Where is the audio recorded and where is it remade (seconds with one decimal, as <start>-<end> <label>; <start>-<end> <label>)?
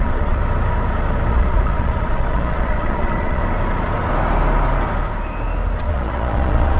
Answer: 0.0-0.4 remade; 0.4-1.3 recorded; 1.3-3.4 remade; 3.4-5.8 recorded; 5.8-6.8 remade